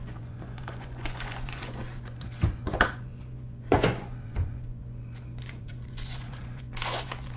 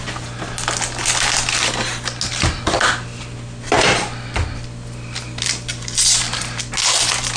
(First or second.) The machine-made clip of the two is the first